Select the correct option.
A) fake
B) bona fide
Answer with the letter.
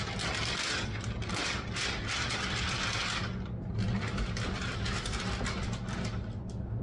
B